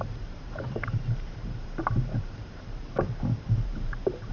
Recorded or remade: remade